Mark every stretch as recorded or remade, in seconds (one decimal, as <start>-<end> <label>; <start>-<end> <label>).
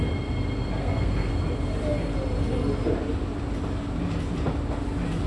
0.0-0.8 recorded; 0.8-1.3 remade; 1.3-5.3 recorded